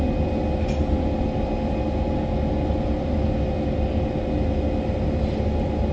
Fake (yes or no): no